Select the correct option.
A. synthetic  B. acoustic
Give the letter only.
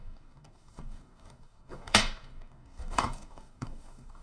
A